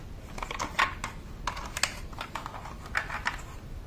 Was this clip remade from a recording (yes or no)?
no